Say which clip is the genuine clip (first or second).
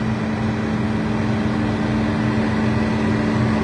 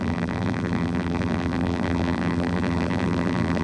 first